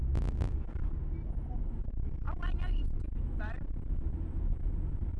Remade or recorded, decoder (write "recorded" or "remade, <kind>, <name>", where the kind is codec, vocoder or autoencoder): recorded